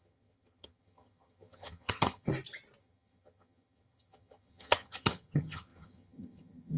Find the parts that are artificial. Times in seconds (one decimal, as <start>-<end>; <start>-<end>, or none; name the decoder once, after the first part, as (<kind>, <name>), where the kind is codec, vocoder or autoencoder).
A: 0.0-2.3 (vocoder, HiFi-GAN); 2.8-6.8